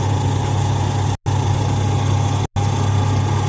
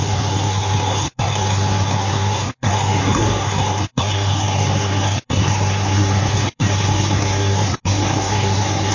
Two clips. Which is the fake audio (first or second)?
second